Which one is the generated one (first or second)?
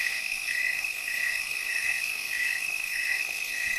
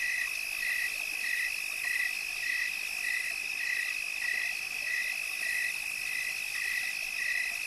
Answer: first